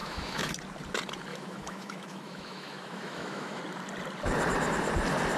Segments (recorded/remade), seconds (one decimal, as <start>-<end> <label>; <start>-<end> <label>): 0.0-0.5 remade; 0.5-1.3 recorded; 1.3-3.6 remade; 3.6-5.4 recorded